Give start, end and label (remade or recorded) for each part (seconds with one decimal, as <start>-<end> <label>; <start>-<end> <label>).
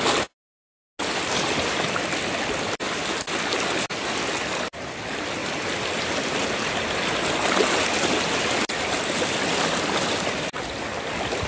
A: 0.0-11.5 recorded